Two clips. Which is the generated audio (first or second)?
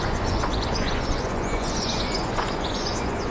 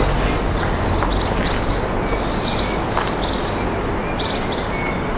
first